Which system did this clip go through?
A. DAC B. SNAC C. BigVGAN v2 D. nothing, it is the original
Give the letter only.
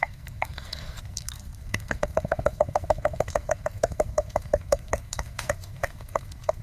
B